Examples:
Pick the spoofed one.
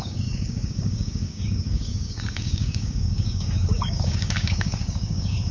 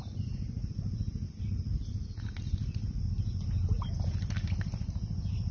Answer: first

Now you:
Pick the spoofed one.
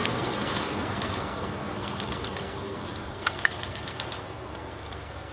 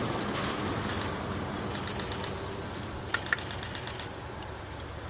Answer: first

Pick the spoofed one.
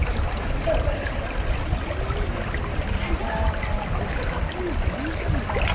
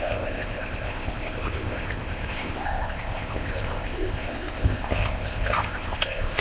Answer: second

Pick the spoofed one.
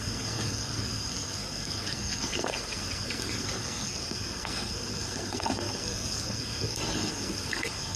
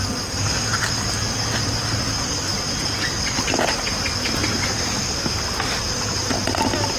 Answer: first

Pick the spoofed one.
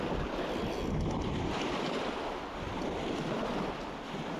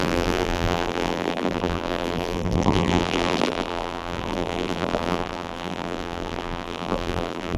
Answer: second